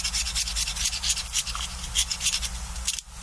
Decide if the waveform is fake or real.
real